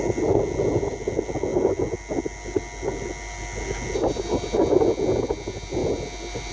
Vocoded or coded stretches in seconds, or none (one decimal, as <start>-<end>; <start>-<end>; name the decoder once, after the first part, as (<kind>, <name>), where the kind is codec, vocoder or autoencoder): none